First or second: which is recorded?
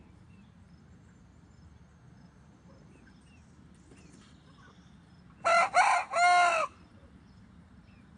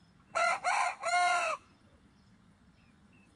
first